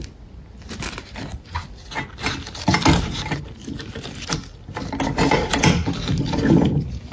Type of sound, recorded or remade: recorded